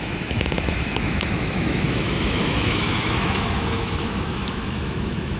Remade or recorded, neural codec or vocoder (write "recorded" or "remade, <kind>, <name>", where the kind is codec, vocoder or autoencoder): remade, autoencoder, DAC-VAE